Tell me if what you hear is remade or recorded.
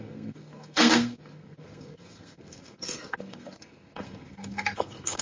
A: remade